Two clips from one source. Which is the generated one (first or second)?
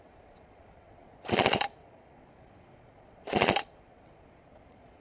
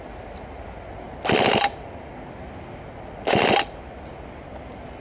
first